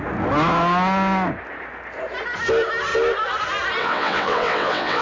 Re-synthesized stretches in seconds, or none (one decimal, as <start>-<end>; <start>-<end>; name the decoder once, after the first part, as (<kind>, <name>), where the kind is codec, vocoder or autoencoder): 3.8-5.0 (vocoder, WaveNeXt)